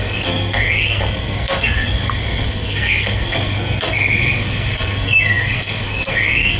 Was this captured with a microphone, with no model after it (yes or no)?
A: no